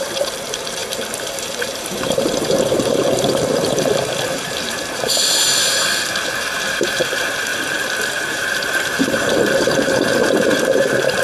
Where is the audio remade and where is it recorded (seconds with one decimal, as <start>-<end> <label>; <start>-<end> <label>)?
0.0-11.2 remade